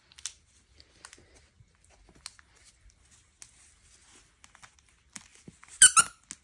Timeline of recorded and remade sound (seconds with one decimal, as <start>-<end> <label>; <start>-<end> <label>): 0.0-6.4 recorded